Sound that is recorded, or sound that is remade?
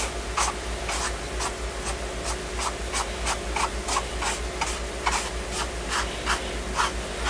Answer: recorded